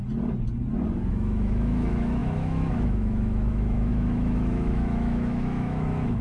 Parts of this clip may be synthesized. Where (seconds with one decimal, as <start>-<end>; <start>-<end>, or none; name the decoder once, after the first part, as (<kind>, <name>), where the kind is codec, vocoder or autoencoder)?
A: 1.1-6.2 (autoencoder, DAC-VAE)